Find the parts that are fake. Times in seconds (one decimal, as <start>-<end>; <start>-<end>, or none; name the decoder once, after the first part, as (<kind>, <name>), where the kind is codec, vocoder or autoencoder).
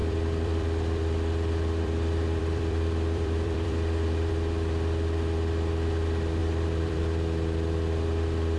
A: 0.0-4.3 (vocoder, BigVGAN v2); 6.4-7.0